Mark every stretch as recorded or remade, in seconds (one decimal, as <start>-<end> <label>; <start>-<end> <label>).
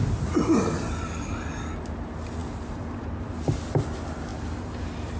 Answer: 0.0-2.4 recorded; 2.4-3.7 remade; 3.7-4.3 recorded; 4.3-5.2 remade